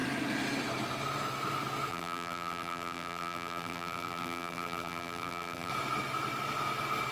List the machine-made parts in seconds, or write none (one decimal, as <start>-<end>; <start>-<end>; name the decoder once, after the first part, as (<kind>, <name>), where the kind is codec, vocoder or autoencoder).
1.9-5.7 (vocoder, BigVGAN v2)